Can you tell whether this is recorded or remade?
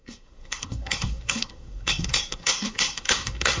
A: remade